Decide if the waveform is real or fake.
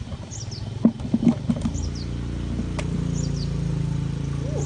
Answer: real